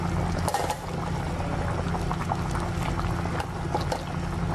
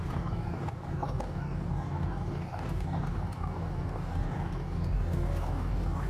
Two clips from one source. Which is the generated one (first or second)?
second